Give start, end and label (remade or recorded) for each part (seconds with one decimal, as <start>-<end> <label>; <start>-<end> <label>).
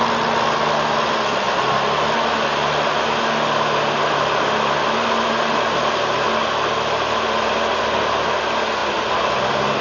0.0-9.8 recorded